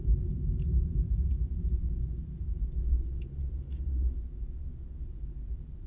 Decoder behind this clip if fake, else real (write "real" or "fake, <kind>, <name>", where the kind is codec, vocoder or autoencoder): fake, vocoder, BigVGAN v2